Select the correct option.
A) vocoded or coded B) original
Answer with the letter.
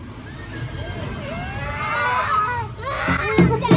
B